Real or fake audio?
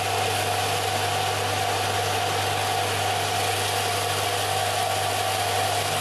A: real